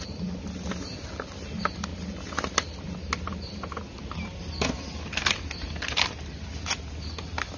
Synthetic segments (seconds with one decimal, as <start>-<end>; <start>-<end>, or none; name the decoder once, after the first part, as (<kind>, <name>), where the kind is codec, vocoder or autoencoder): none